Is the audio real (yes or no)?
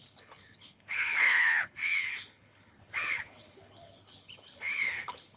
no